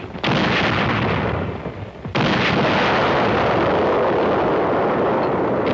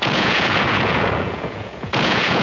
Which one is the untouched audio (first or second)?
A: first